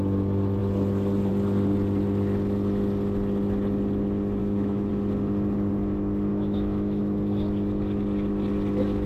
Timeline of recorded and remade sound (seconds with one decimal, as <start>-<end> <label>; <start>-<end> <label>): 0.0-4.4 recorded; 4.4-4.9 remade; 4.9-6.3 recorded; 6.3-7.0 remade; 7.0-9.1 recorded